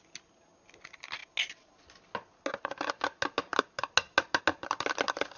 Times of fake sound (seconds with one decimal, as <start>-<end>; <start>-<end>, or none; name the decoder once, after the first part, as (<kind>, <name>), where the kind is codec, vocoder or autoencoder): none